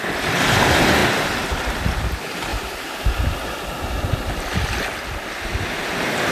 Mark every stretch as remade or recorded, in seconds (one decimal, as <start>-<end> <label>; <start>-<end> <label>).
0.0-6.3 recorded